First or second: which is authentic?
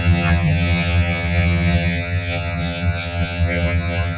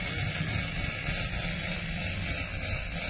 second